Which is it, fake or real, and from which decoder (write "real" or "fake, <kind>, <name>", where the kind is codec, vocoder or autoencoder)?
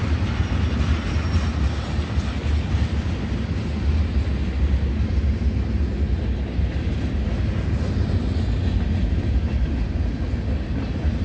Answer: real